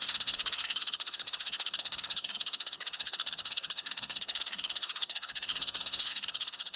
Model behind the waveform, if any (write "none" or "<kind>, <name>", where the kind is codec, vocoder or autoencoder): codec, SNAC